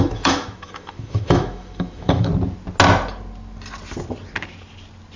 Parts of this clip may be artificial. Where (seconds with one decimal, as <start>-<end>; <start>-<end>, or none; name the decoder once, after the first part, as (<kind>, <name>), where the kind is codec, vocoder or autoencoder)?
0.0-2.3 (autoencoder, DAC-VAE)